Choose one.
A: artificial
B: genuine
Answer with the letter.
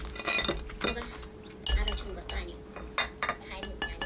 B